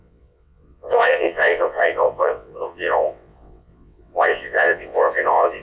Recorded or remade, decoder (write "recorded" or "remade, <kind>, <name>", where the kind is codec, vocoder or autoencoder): remade, vocoder, WaveNeXt